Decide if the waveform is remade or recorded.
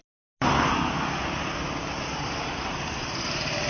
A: recorded